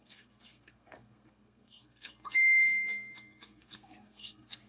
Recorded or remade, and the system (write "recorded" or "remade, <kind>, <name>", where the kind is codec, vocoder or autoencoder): remade, codec, SNAC